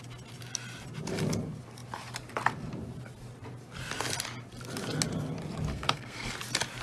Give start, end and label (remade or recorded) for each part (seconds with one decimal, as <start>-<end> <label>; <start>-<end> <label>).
0.0-5.7 recorded; 5.7-6.3 remade; 6.3-6.8 recorded